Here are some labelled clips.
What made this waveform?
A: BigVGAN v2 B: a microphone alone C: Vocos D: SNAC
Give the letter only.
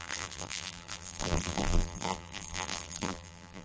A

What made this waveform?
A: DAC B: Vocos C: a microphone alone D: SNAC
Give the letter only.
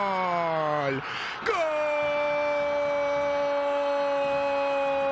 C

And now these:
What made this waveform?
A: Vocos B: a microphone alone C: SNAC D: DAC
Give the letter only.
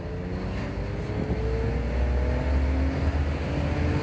B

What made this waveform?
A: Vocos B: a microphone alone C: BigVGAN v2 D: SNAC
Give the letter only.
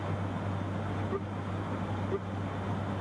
B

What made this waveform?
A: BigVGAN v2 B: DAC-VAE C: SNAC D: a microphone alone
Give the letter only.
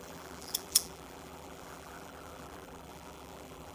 A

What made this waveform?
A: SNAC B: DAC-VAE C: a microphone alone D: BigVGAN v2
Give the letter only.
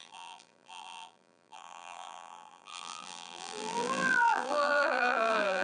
D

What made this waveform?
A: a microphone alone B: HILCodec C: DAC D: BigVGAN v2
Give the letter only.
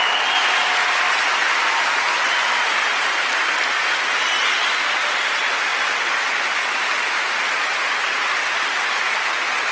A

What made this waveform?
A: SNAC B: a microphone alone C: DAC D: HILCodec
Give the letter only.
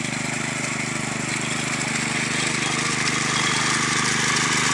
B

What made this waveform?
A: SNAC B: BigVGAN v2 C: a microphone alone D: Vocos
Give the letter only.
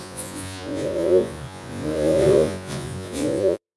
D